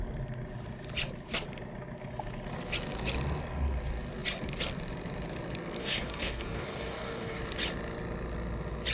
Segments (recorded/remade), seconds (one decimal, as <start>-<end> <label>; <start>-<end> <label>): 0.0-5.8 recorded; 5.8-7.4 remade; 7.4-8.9 recorded